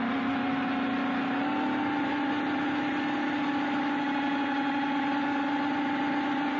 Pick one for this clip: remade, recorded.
recorded